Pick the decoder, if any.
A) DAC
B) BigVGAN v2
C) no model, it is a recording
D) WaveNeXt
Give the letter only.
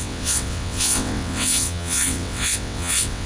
D